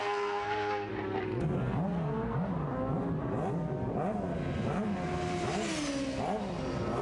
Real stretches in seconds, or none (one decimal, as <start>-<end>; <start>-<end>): 0.9-1.9; 2.5-7.0